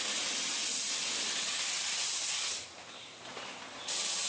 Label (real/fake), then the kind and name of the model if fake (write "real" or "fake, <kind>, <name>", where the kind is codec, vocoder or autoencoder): real